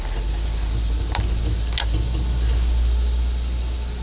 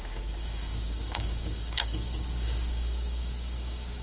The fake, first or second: second